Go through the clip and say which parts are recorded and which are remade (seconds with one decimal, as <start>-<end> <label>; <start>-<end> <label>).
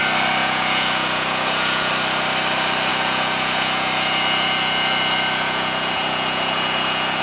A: 0.0-0.4 recorded; 0.4-1.9 remade; 1.9-2.9 recorded; 2.9-7.2 remade